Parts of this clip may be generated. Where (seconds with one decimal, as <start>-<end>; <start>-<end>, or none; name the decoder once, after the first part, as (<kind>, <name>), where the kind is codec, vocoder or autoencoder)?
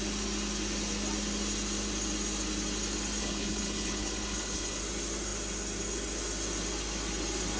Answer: 3.2-4.8 (codec, HILCodec)